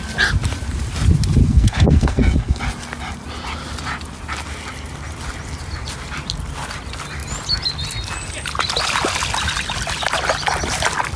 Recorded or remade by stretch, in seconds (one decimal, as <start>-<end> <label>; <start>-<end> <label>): 0.0-1.4 recorded; 1.4-2.6 remade; 2.6-11.2 recorded